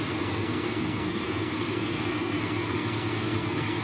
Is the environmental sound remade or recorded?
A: remade